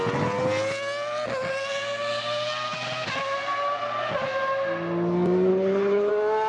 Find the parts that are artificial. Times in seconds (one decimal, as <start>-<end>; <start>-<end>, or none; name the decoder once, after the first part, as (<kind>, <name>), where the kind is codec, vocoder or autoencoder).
5.5-6.1 (codec, HILCodec)

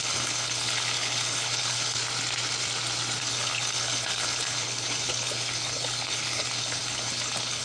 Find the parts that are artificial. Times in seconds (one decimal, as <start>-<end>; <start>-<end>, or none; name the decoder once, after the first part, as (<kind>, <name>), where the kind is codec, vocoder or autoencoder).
0.0-2.0 (codec, HILCodec); 3.2-7.6

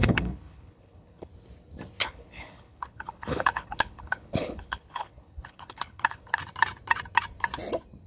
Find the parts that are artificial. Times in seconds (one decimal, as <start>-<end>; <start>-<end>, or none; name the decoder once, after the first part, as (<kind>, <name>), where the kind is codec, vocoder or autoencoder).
0.0-1.3 (codec, HILCodec); 2.0-6.4

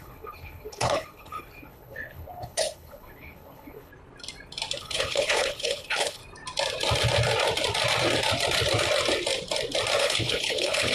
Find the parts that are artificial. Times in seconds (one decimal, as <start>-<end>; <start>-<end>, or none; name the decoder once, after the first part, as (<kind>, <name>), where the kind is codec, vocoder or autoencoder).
0.0-3.9 (codec, HILCodec); 4.8-6.2; 10.0-10.9